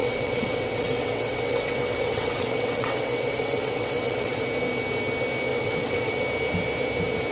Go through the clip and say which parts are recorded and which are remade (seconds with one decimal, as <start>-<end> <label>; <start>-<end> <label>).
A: 0.0-4.4 remade; 4.4-5.5 recorded; 5.5-6.2 remade; 6.2-7.3 recorded